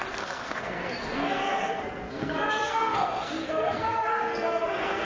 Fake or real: fake